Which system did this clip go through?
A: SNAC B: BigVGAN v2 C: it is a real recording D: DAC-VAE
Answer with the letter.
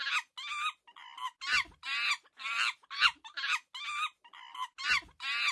C